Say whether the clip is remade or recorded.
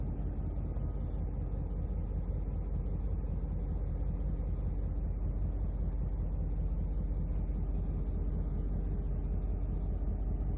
recorded